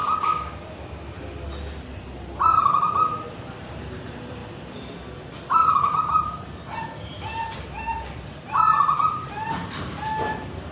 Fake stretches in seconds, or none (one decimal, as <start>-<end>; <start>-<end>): 2.8-4.4; 5.2-10.7